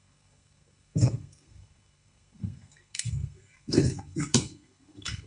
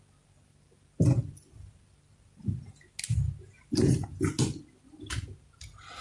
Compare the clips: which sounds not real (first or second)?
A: first